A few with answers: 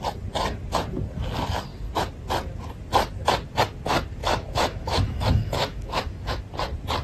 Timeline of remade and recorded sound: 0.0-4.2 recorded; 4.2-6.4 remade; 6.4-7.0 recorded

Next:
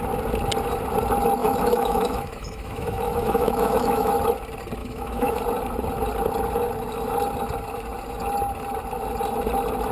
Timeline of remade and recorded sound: 0.0-1.4 recorded; 1.4-4.1 remade; 4.1-4.8 recorded; 4.8-5.4 remade; 5.4-9.9 recorded

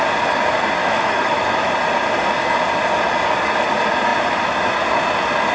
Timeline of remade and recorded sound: 0.0-0.8 recorded; 0.8-1.7 remade; 1.7-5.5 recorded

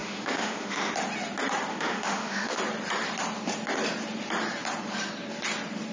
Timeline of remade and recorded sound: 0.0-0.9 remade; 0.9-1.7 recorded; 1.7-2.6 remade; 2.6-5.9 recorded

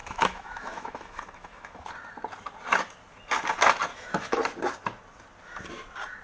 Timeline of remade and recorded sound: 0.0-1.9 remade; 1.9-3.9 recorded; 3.9-4.4 remade; 4.4-6.2 recorded

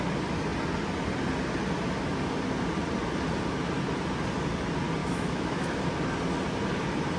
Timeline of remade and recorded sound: 0.0-5.0 recorded; 5.0-5.8 remade; 5.8-7.2 recorded